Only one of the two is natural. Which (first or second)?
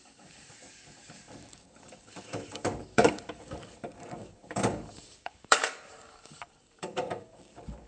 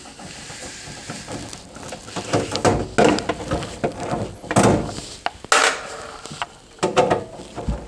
second